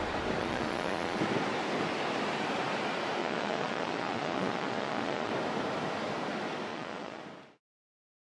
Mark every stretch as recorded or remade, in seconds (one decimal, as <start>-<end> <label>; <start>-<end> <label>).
0.0-0.4 recorded; 0.4-1.2 remade; 1.2-3.2 recorded; 3.2-5.3 remade; 5.3-6.7 recorded; 6.7-7.2 remade; 7.2-8.2 recorded